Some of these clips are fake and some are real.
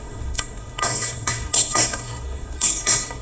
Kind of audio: fake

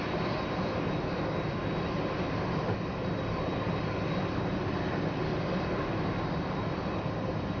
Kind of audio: real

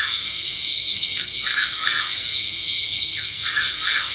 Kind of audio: fake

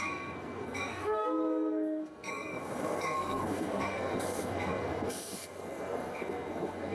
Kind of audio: fake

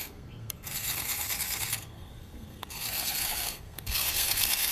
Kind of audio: fake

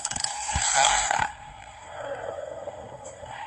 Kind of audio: fake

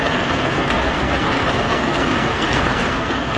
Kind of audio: fake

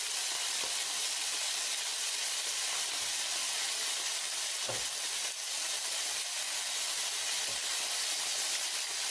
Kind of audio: real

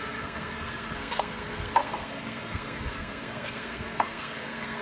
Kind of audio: fake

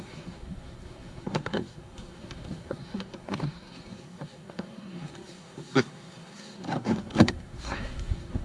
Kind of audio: fake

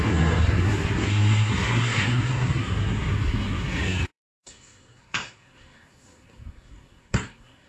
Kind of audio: fake